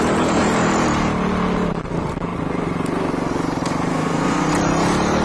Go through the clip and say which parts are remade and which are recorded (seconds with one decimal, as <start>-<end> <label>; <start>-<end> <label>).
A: 0.0-3.9 recorded; 3.9-4.5 remade; 4.5-5.2 recorded